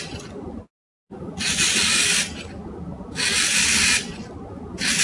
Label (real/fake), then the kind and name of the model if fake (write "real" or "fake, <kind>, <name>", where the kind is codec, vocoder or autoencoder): real